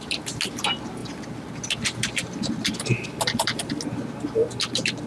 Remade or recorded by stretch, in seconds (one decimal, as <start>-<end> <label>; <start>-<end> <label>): 0.0-5.1 recorded